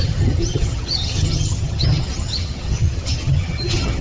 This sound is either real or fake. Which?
fake